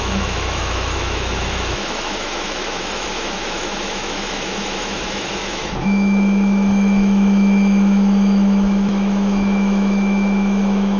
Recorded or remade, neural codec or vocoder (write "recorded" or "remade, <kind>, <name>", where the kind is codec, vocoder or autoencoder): remade, autoencoder, DAC-VAE